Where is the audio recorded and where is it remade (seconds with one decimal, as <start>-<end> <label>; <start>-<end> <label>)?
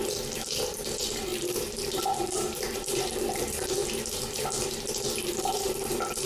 0.0-3.8 remade; 3.8-4.9 recorded; 4.9-6.2 remade